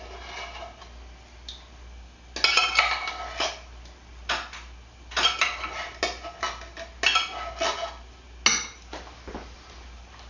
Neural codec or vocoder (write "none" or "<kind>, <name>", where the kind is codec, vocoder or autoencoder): none